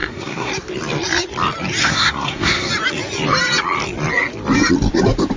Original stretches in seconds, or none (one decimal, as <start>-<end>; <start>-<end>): 0.5-1.8; 2.7-5.4